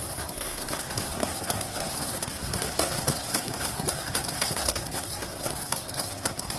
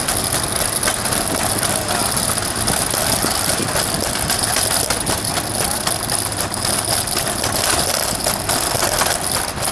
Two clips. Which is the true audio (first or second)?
second